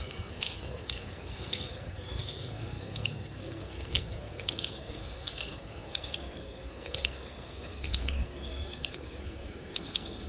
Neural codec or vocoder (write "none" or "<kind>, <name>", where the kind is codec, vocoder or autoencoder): codec, SNAC